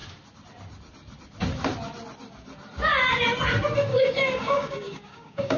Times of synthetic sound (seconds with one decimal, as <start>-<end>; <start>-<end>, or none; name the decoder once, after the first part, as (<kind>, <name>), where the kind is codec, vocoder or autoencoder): 3.9-5.6 (codec, DAC)